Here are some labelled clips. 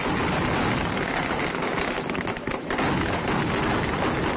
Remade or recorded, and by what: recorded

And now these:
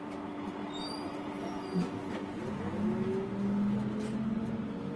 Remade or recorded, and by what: recorded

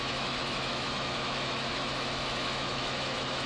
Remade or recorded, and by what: remade, autoencoder, DAC-VAE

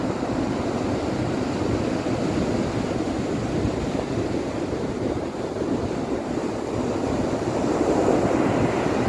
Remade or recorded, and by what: recorded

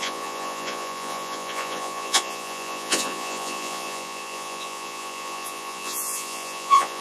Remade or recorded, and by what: remade, vocoder, Vocos